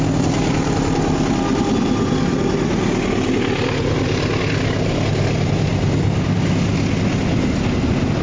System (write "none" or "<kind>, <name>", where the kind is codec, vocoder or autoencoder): none